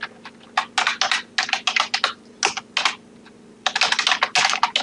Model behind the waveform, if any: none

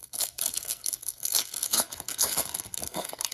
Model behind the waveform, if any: codec, SNAC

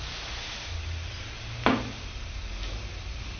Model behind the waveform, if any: none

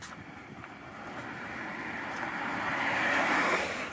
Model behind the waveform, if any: none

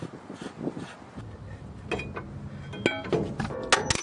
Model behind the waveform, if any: none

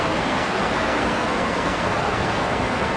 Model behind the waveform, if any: codec, SNAC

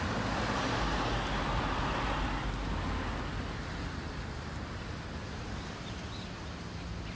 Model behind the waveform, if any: none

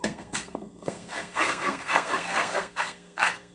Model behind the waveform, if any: codec, SNAC